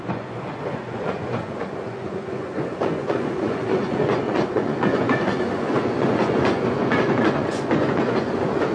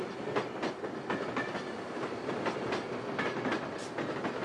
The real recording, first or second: second